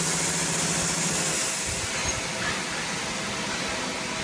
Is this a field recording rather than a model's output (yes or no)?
yes